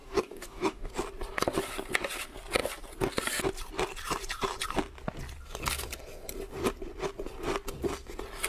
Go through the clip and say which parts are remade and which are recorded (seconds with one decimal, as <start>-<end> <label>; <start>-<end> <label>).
0.0-0.9 remade; 0.9-8.5 recorded